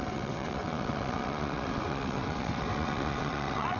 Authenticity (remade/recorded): remade